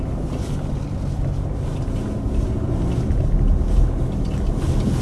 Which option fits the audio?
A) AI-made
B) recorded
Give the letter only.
B